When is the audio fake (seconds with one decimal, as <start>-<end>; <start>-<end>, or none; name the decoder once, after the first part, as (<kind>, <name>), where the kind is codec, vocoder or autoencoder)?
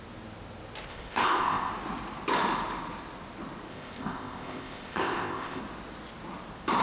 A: 0.9-1.7 (codec, ZipCodec); 3.7-5.6